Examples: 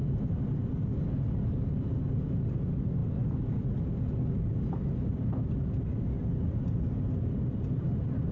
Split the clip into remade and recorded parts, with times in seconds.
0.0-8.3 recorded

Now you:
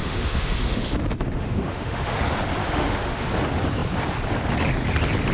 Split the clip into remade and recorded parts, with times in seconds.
0.0-2.2 remade; 2.2-2.6 recorded; 2.6-3.3 remade; 3.3-5.3 recorded